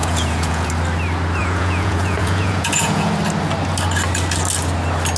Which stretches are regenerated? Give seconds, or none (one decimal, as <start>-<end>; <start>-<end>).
0.0-0.7; 1.4-3.1